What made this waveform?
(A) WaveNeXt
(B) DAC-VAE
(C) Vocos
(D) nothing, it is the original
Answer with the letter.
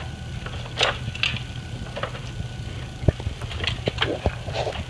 D